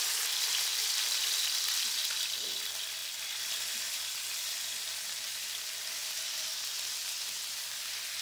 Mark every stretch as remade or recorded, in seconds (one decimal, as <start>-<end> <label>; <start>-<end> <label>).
0.0-6.0 recorded; 6.0-7.7 remade; 7.7-8.2 recorded